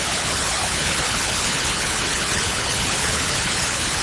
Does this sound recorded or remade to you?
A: remade